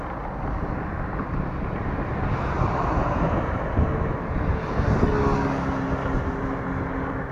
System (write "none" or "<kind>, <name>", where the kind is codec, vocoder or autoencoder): none